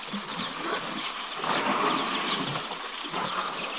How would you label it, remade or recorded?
recorded